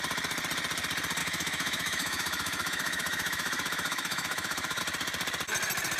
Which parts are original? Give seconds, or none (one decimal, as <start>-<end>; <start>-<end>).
0.0-1.2; 4.8-6.0